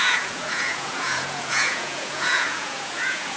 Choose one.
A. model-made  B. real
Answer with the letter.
A